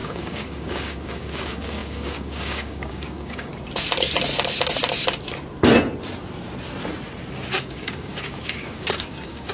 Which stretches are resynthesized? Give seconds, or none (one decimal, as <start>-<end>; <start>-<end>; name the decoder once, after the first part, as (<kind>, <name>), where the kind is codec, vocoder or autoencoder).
0.0-3.5 (codec, DAC); 7.5-9.5